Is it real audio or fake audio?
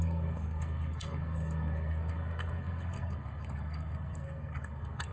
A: fake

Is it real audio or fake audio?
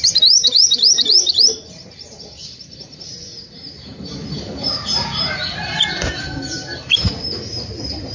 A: fake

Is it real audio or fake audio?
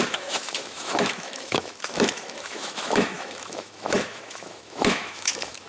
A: fake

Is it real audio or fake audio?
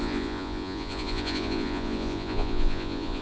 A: fake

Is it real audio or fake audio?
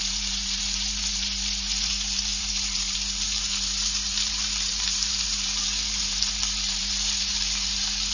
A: fake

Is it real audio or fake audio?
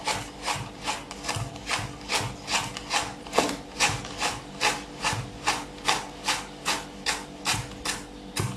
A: real